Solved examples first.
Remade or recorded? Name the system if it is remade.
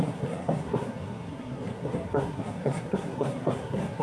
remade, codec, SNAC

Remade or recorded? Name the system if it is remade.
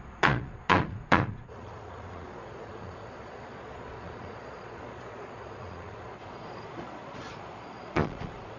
remade, vocoder, Vocos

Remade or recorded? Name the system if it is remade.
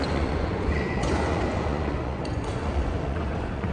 remade, vocoder, Vocos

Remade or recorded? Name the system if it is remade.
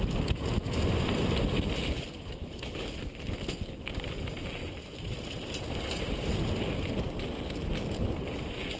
recorded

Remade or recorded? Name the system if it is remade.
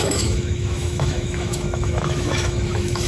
remade, autoencoder, DAC-VAE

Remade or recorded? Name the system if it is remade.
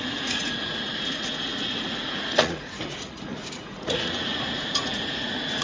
remade, vocoder, Vocos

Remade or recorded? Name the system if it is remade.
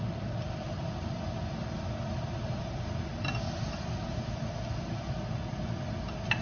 recorded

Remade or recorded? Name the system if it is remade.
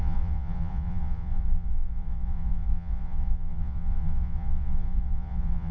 remade, vocoder, Vocos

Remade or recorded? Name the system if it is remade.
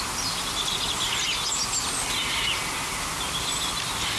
recorded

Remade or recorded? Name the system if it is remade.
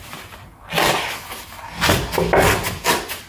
recorded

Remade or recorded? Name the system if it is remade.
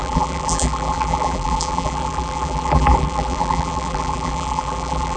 remade, vocoder, BigVGAN v2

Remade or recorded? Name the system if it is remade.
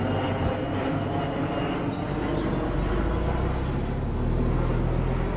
recorded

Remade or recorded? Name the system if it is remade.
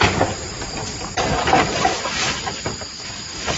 recorded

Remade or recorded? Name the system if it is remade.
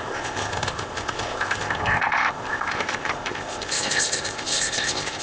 remade, codec, ZipCodec